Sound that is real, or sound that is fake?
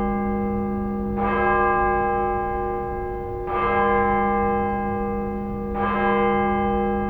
real